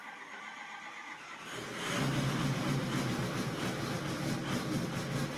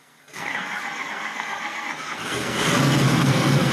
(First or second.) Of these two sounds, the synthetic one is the second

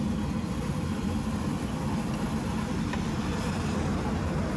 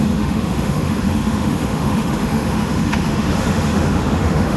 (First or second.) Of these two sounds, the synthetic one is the second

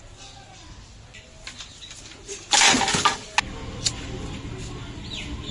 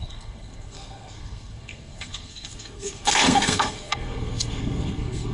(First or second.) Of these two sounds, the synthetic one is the second